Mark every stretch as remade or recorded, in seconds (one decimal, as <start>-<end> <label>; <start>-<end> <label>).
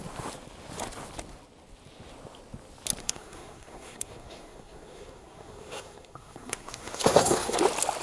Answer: 0.0-3.0 recorded; 3.0-7.6 remade; 7.6-8.0 recorded